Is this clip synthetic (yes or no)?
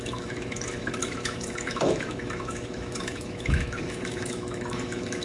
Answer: yes